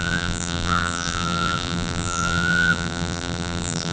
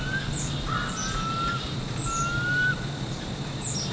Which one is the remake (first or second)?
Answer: first